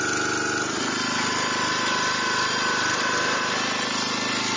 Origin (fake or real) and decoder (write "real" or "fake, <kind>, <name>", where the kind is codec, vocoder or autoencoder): real